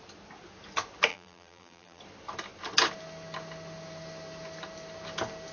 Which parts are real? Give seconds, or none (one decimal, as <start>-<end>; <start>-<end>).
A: 0.0-1.1; 2.0-5.5